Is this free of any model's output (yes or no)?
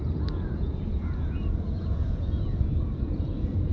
no